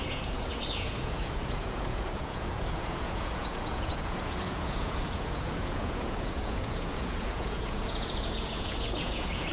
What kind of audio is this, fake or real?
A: fake